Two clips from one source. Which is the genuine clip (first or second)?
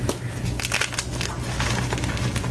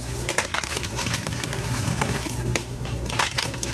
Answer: first